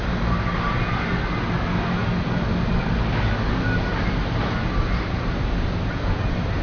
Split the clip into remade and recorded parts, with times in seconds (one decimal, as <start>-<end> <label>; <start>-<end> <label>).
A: 0.0-6.6 recorded